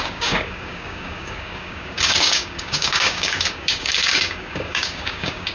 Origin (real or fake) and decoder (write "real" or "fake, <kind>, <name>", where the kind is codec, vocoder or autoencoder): fake, codec, DAC